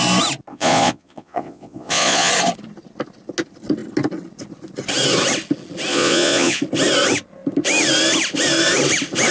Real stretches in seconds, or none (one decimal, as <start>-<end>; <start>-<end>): 0.0-0.5; 2.3-5.9; 6.6-9.3

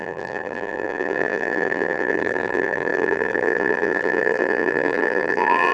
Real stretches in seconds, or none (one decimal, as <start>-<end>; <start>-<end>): none

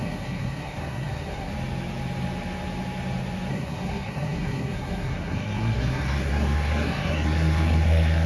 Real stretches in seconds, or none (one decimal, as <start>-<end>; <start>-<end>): 1.5-3.5

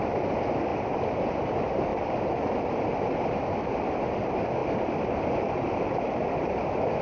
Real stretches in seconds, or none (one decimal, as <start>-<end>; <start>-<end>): 0.0-7.0

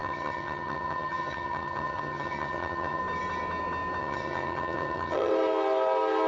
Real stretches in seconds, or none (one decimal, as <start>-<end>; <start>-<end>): 3.0-4.0; 5.3-6.3

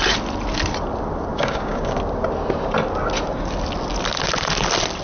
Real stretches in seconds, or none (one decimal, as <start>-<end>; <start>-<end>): 0.0-1.3; 2.0-5.0

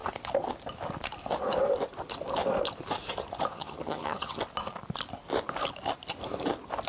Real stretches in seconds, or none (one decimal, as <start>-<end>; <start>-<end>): 0.0-3.5; 4.4-6.9

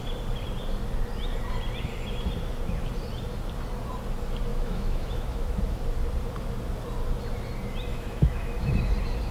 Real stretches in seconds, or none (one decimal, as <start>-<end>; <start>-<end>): 0.0-4.5; 5.6-7.9; 8.7-9.3